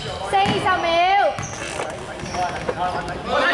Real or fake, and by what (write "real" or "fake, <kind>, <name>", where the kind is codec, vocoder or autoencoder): real